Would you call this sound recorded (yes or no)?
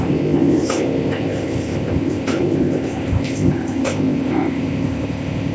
no